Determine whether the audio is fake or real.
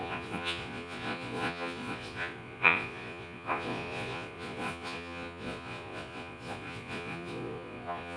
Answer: fake